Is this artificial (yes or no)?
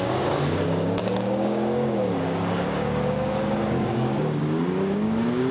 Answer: yes